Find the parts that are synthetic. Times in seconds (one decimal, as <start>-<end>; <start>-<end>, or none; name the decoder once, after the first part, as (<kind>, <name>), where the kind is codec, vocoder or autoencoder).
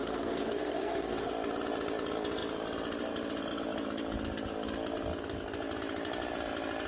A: 0.0-1.3 (codec, SNAC)